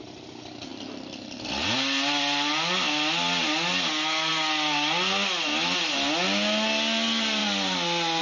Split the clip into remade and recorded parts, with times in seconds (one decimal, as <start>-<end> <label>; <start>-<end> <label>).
0.0-8.2 recorded